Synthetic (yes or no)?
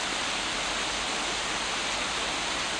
no